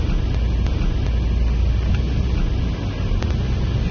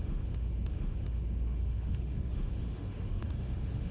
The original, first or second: first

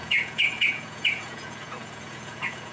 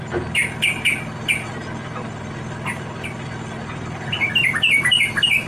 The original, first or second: second